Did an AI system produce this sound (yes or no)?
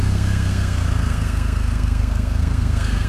yes